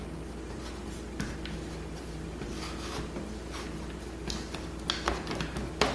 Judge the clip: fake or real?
real